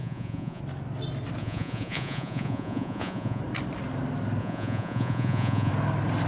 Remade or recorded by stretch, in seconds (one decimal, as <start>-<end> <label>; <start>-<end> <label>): 0.0-0.6 remade; 0.6-1.4 recorded; 1.4-3.4 remade; 3.4-4.4 recorded; 4.4-5.7 remade; 5.7-6.3 recorded